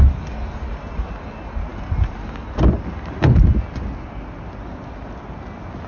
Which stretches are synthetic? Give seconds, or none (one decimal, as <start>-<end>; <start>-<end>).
none